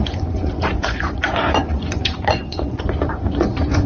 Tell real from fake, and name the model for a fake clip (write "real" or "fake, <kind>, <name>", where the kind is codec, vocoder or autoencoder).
fake, vocoder, Vocos